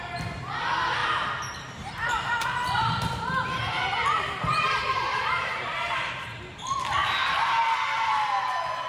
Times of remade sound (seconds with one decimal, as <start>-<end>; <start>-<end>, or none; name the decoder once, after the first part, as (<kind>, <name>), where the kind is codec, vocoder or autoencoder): 1.0-3.2 (vocoder, BigVGAN v2); 4.0-6.1